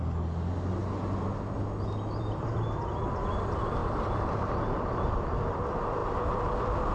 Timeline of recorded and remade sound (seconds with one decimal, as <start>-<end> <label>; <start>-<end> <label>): 0.0-0.8 remade; 0.8-2.2 recorded; 2.2-6.0 remade; 6.0-6.9 recorded